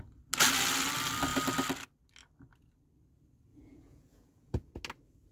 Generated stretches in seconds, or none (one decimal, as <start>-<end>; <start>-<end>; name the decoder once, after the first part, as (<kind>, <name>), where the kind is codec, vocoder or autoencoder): 3.5-4.8 (vocoder, Vocos)